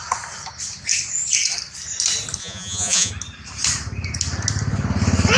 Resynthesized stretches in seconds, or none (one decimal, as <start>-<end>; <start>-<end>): 2.4-3.1